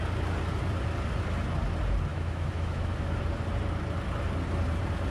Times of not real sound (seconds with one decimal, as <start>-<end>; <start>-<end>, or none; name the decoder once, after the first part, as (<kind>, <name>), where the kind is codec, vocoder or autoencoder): 2.1-3.2 (autoencoder, DAC-VAE)